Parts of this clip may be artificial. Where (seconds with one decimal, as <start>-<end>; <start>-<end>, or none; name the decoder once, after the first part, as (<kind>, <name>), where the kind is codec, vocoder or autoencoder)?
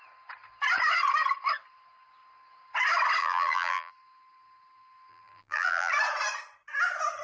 3.2-3.9 (vocoder, BigVGAN v2); 5.1-5.9